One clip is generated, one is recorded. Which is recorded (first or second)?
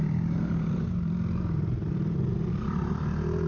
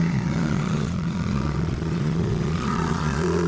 first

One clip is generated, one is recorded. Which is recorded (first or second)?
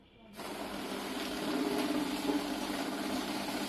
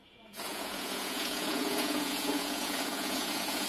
first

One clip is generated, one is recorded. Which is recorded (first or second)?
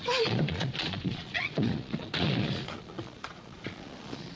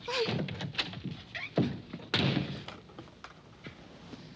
second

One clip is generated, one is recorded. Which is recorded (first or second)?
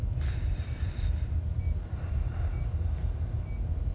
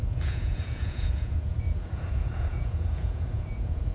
first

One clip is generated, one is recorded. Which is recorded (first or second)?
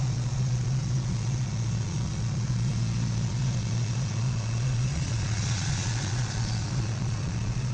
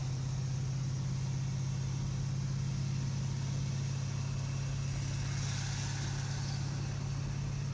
second